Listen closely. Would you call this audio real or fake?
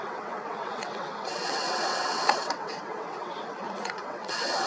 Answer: fake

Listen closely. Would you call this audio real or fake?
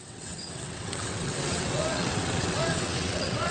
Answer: fake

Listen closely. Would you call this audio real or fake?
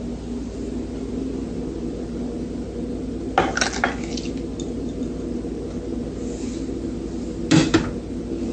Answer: real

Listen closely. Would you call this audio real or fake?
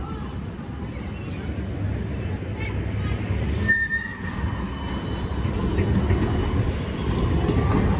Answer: real